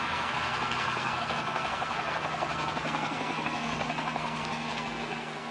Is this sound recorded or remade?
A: remade